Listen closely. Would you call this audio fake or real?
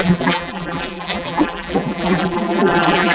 fake